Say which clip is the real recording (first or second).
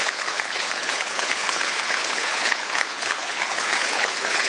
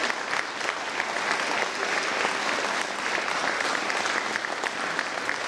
second